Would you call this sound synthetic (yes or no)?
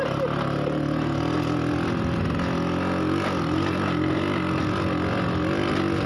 no